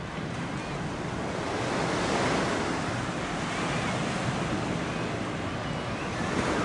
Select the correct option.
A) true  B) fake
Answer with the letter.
A